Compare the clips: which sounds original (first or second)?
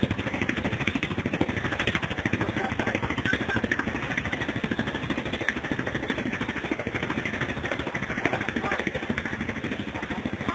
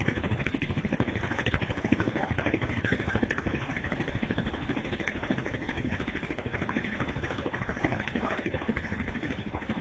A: first